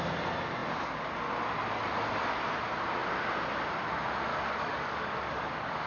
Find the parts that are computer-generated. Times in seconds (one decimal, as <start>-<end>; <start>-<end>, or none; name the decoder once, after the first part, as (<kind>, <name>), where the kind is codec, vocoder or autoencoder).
4.3-5.9 (codec, DAC)